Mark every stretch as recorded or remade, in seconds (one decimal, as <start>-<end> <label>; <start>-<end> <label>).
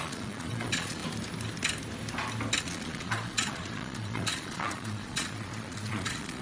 0.0-1.0 remade; 1.0-2.6 recorded; 2.6-6.4 remade